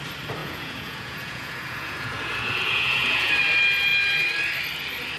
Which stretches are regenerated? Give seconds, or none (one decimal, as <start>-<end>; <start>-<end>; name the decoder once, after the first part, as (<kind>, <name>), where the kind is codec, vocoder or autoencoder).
0.4-3.3 (vocoder, Vocos)